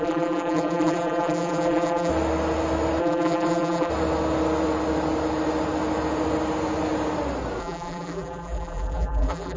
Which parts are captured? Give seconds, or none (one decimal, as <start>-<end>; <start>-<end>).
2.1-3.0; 3.9-7.6